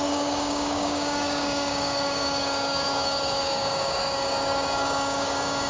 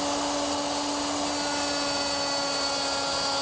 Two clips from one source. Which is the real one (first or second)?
second